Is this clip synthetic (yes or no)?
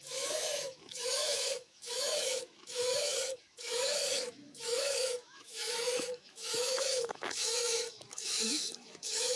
yes